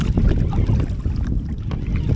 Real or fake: real